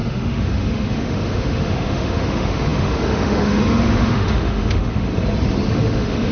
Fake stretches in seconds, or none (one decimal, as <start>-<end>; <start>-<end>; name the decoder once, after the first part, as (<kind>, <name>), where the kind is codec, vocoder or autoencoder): 0.0-5.1 (autoencoder, DAC-VAE); 5.7-6.3